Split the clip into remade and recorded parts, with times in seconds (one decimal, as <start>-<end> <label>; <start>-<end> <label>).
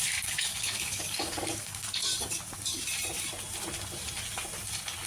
0.0-2.1 remade; 2.1-5.1 recorded